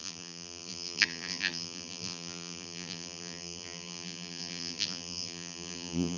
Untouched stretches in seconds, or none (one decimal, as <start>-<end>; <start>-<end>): none